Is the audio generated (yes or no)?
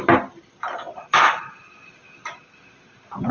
no